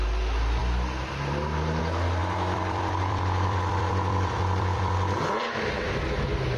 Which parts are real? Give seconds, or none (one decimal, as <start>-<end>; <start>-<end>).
0.0-2.2; 6.0-6.6